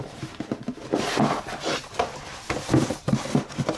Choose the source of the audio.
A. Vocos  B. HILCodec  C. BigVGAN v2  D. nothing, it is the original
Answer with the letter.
D